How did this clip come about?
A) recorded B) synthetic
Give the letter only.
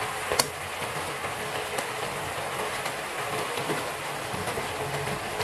A